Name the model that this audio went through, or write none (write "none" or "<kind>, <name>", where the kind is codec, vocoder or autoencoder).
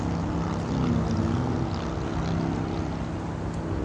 none